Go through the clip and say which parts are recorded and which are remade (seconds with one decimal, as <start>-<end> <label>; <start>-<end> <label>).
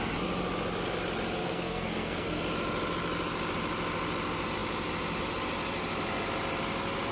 0.0-1.4 recorded; 1.4-2.4 remade; 2.4-7.1 recorded